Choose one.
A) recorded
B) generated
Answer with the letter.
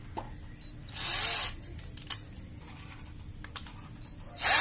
A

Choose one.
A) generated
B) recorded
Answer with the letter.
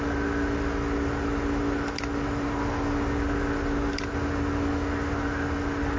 B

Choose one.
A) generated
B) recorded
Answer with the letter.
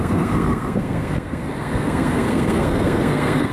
A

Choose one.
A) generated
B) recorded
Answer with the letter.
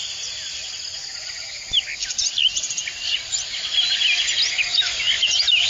B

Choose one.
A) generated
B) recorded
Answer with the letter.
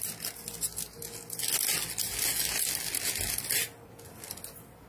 B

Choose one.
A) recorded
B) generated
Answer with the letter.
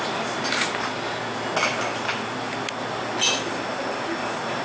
A